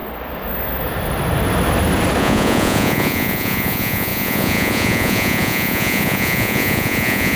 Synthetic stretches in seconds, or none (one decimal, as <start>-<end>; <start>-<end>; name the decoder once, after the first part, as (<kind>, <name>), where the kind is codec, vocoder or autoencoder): 2.2-7.4 (vocoder, Vocos)